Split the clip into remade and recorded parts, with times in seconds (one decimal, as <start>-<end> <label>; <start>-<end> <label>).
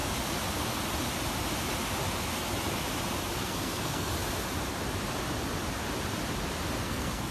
0.0-3.4 recorded; 3.4-4.1 remade; 4.1-6.8 recorded; 6.8-7.3 remade